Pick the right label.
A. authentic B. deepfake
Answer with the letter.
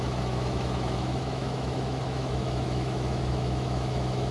B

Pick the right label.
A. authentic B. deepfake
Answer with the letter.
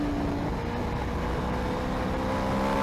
A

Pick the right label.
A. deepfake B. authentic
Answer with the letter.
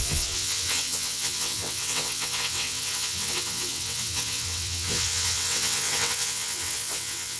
A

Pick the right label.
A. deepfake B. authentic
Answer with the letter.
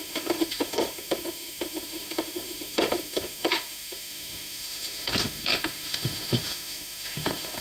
A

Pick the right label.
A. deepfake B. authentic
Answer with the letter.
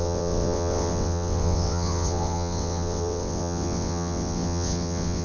A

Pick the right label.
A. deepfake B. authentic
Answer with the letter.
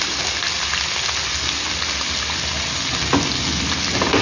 B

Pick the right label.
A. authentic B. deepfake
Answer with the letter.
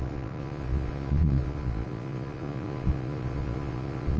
B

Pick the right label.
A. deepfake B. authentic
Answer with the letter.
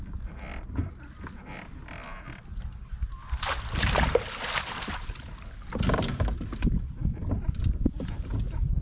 B